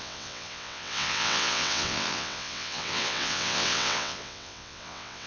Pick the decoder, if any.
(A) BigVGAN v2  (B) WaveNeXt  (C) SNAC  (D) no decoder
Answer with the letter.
B